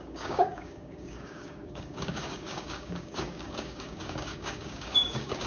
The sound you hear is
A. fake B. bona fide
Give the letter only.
A